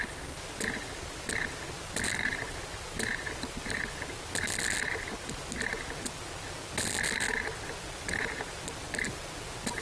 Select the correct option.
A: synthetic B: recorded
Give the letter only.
B